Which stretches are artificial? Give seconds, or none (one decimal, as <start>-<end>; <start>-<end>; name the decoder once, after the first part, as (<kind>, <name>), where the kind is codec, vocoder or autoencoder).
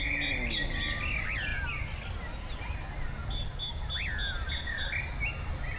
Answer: none